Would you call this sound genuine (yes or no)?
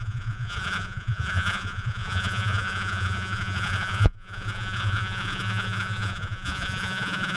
no